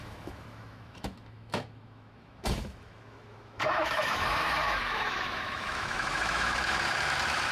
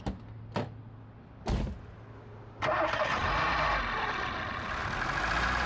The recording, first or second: second